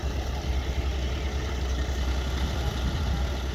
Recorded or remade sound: recorded